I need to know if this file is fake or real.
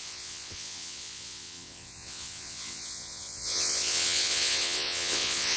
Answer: fake